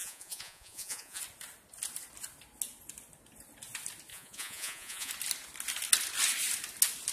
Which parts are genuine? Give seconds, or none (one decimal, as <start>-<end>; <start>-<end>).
1.2-4.1; 5.1-7.1